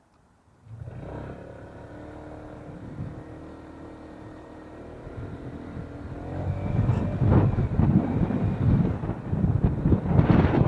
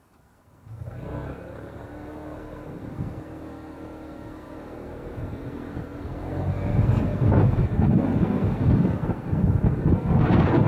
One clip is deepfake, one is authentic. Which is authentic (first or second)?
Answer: first